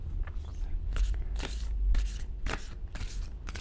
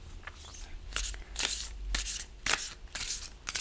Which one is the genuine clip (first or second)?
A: second